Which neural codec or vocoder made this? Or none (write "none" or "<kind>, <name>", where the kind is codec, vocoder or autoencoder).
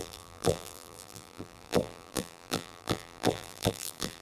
vocoder, BigVGAN v2